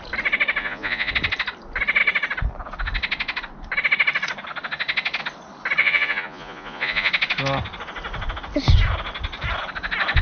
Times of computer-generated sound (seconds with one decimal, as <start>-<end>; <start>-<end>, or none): 0.6-1.1; 5.8-7.1